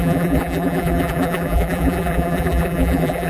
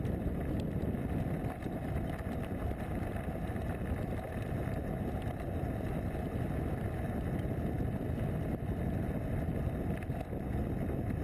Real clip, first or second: second